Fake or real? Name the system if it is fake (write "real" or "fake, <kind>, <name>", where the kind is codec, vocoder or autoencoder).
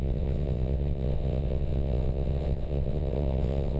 fake, vocoder, WaveNeXt